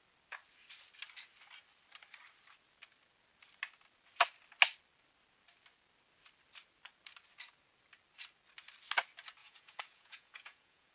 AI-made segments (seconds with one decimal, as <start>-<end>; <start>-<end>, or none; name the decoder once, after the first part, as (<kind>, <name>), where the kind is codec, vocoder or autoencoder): 9.4-10.9 (vocoder, Vocos)